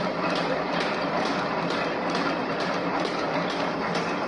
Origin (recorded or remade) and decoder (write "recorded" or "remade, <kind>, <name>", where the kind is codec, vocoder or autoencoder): remade, vocoder, BigVGAN v2